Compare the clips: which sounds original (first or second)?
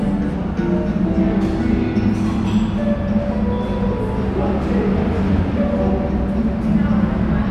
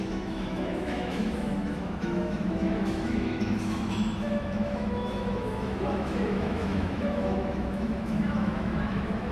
first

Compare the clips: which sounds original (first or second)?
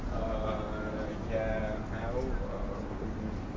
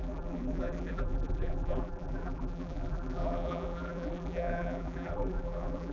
first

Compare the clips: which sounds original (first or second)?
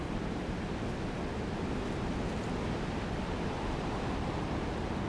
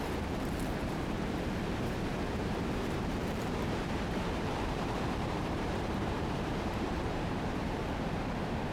first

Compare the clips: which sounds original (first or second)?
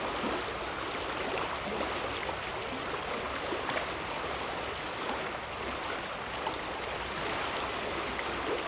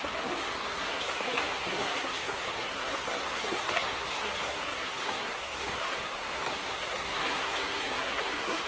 first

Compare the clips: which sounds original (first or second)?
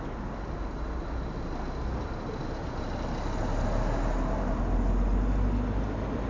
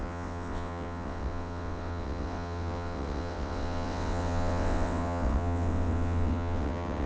first